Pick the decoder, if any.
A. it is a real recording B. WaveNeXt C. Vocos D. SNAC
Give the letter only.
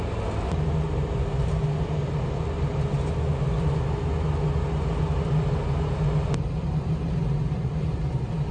A